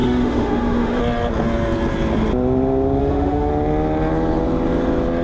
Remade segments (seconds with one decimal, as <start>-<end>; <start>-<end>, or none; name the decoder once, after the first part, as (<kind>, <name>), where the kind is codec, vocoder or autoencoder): 0.0-1.0 (autoencoder, DAC-VAE); 3.0-3.5